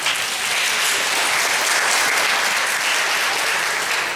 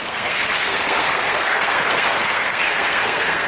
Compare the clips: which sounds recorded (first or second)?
first